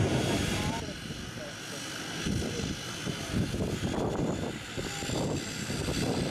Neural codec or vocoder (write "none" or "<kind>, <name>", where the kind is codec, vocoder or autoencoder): none